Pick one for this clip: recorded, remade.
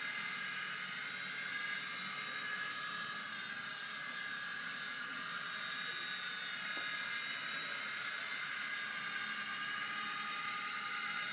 recorded